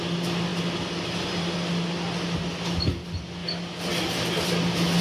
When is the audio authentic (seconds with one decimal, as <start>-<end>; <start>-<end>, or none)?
0.0-5.0